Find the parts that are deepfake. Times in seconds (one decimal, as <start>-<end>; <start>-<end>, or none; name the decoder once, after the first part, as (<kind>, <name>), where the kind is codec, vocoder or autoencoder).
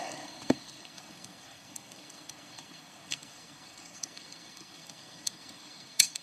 0.0-6.2 (codec, SNAC)